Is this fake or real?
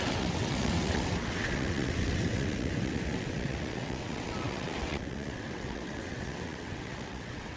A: fake